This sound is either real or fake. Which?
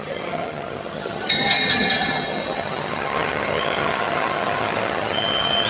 fake